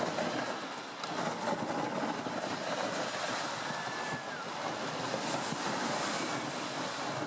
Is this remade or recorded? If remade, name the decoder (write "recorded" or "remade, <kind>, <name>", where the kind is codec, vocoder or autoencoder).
recorded